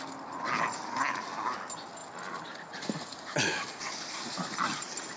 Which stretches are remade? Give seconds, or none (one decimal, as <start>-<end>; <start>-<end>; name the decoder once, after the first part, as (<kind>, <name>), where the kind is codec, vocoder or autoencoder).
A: none